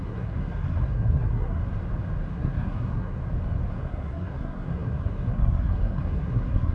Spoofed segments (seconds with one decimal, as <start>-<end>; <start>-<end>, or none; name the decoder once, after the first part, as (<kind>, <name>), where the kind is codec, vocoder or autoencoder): 0.0-1.6 (codec, SNAC); 2.3-3.2; 3.7-6.7